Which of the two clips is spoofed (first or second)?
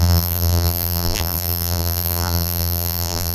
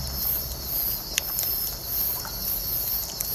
first